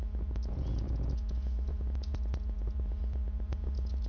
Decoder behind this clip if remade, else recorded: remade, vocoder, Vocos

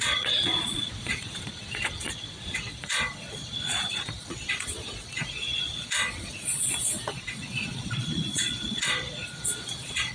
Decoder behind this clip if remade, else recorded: remade, vocoder, Vocos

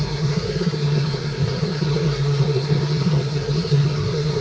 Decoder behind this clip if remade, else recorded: remade, codec, SNAC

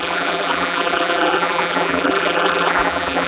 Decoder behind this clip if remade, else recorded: remade, vocoder, BigVGAN v2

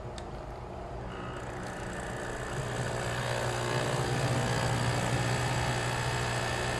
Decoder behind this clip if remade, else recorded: recorded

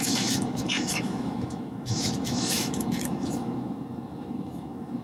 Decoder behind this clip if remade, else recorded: remade, autoencoder, DAC-VAE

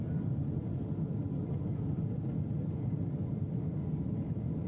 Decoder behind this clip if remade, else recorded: recorded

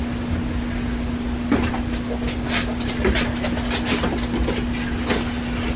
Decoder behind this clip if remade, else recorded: recorded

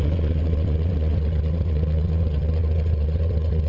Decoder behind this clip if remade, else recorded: remade, vocoder, WaveNeXt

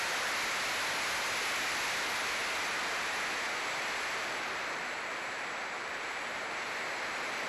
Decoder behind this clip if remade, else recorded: recorded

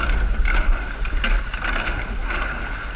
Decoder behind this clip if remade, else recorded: recorded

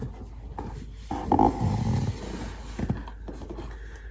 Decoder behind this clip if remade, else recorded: recorded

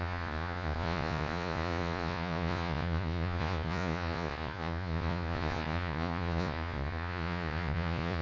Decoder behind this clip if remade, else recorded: remade, vocoder, Vocos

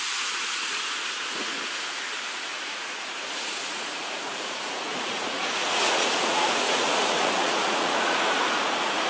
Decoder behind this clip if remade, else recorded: remade, vocoder, Vocos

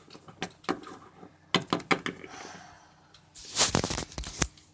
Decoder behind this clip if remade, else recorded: recorded